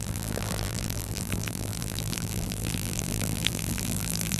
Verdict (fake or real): fake